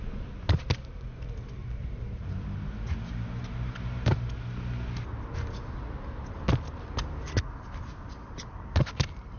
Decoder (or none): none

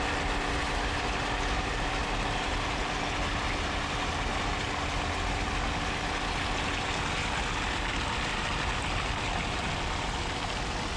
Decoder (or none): none